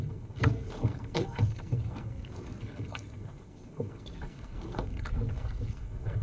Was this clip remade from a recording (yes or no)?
yes